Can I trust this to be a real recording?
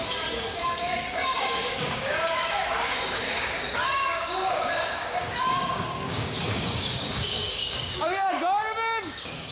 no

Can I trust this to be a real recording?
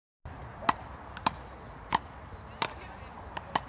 yes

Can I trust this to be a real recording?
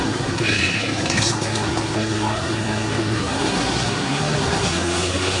no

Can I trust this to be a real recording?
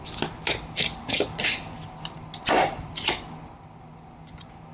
yes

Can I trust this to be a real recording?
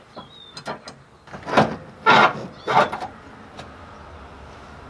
yes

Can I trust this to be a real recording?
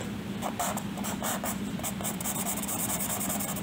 yes